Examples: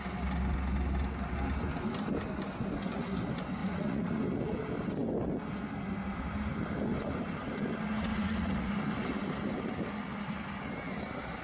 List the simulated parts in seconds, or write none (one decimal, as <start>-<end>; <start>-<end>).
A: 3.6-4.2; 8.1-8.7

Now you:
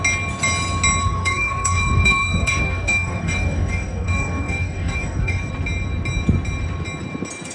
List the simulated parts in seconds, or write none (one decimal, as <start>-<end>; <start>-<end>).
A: 1.0-5.5

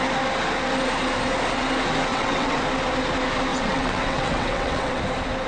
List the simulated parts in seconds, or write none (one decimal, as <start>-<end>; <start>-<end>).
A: 2.1-2.6; 3.5-5.0

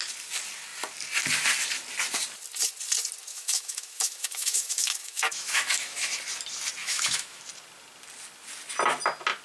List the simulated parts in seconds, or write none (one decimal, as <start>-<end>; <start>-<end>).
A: 3.3-6.2; 6.8-7.4

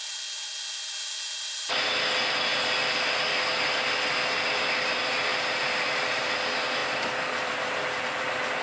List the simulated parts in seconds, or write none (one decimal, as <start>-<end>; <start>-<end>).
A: 2.5-3.1; 5.3-6.2; 6.8-8.2

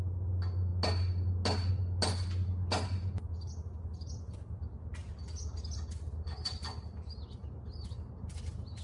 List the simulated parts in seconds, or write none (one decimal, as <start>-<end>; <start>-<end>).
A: none